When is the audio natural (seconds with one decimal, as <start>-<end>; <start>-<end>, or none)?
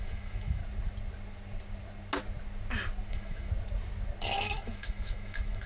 0.6-3.1; 3.5-4.2